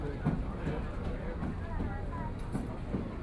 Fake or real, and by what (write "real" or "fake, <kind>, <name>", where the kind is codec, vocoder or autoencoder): real